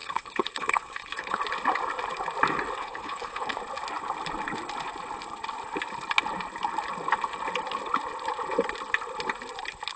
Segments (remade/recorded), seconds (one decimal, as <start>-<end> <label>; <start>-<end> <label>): 0.0-1.4 remade; 1.4-2.8 recorded; 2.8-3.5 remade; 3.5-10.0 recorded